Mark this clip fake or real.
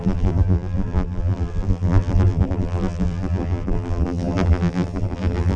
fake